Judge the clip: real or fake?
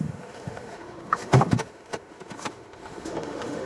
fake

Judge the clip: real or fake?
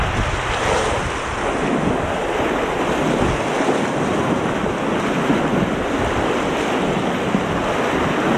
real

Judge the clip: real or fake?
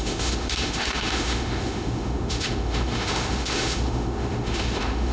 fake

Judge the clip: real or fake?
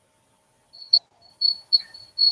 real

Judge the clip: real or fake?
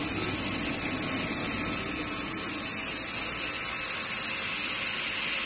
real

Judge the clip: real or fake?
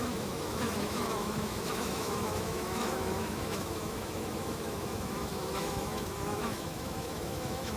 fake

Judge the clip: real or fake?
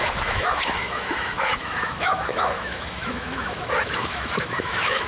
fake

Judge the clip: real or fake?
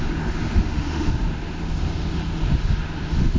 fake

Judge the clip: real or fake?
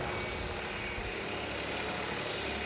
real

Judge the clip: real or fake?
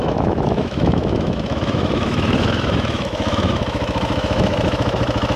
fake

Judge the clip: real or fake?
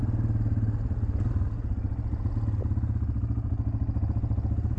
real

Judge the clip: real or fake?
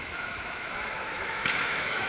fake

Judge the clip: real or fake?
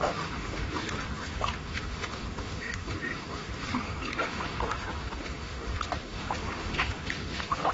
fake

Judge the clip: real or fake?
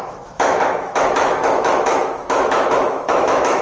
fake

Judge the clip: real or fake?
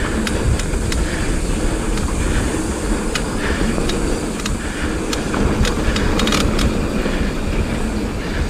real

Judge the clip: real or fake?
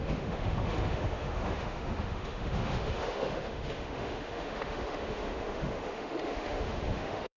fake